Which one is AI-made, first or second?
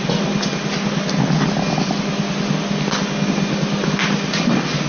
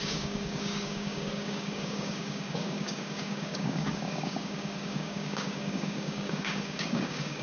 second